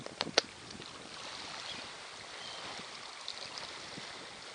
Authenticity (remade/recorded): recorded